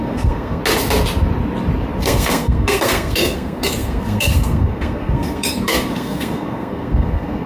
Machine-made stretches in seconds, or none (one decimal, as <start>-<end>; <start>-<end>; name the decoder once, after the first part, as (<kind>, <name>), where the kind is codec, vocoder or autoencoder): 0.0-0.6 (codec, SNAC); 2.0-7.5